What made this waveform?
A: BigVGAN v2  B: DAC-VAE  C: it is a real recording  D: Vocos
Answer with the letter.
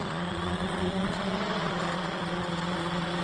D